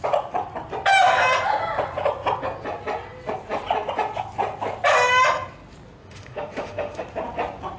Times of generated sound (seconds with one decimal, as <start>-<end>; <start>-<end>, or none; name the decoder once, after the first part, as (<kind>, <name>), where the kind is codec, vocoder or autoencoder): 6.0-7.0 (autoencoder, DAC-VAE)